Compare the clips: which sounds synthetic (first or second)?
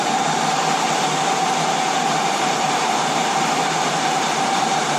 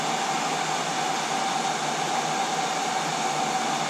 first